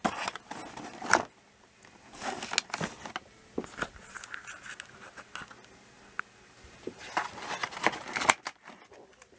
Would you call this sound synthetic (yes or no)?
no